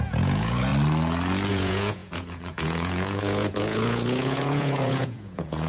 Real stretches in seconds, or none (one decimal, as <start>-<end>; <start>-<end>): 0.7-1.5

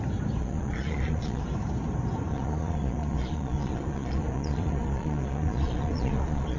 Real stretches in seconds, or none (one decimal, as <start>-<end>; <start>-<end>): 0.0-0.4; 1.4-2.3

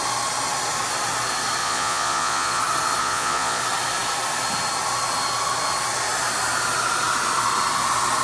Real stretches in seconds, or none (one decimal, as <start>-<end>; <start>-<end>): 0.0-1.6; 2.6-3.0; 3.6-8.2

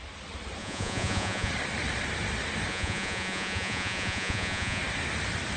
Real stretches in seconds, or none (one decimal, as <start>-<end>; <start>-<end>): 0.0-0.6; 1.5-2.7; 4.8-5.6

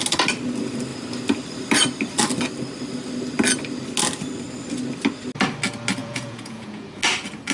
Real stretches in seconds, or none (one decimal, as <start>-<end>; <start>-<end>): 0.0-6.0; 7.0-7.5

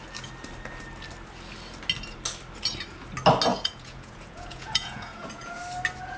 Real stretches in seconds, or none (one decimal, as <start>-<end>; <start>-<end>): 0.0-3.5; 5.6-6.2

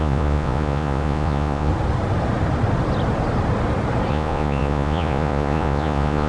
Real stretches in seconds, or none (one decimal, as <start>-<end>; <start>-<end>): 1.7-4.1